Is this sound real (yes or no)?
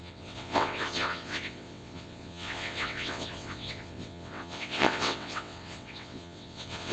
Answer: no